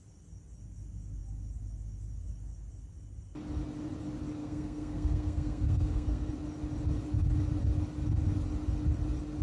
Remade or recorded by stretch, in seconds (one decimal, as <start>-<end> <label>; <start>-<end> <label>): 0.0-4.4 recorded; 4.4-6.3 remade; 6.3-9.4 recorded